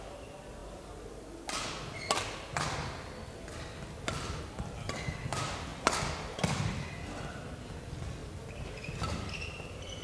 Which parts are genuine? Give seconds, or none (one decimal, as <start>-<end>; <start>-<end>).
0.0-10.0